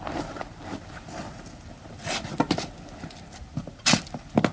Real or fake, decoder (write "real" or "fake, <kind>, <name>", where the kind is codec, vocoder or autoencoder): real